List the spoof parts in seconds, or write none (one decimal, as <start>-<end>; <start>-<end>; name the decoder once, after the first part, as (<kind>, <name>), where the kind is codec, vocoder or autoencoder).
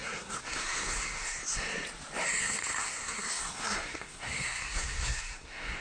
0.0-1.4 (codec, SNAC); 2.4-5.8